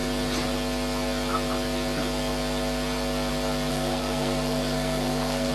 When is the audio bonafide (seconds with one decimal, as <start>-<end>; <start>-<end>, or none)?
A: 0.0-3.7

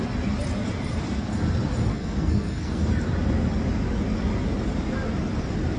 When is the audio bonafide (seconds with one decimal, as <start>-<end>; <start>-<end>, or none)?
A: 0.0-1.9; 2.8-5.8

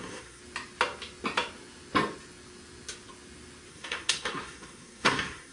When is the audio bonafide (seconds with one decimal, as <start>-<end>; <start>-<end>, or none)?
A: 0.4-3.7

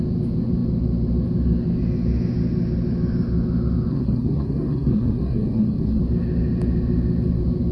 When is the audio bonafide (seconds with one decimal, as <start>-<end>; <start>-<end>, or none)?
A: 0.0-3.9; 6.0-7.7